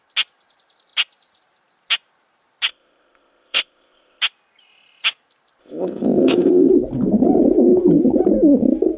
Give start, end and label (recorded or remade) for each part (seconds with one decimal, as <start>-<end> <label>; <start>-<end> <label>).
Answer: 0.0-2.7 recorded; 2.7-4.2 remade; 4.2-5.6 recorded; 5.6-6.7 remade; 6.7-9.0 recorded